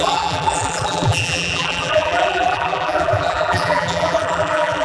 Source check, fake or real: fake